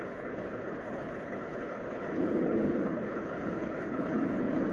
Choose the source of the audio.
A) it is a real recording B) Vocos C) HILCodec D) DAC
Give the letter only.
C